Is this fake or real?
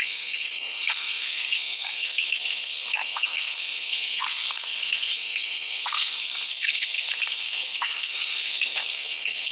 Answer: fake